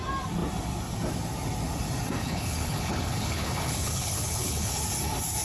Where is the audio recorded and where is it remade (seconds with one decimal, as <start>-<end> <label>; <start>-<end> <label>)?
0.0-2.2 recorded; 2.2-4.7 remade; 4.7-5.4 recorded